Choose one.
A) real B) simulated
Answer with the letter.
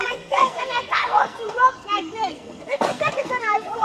B